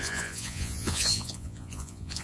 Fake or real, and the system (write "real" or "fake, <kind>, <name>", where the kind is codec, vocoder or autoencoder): fake, vocoder, Vocos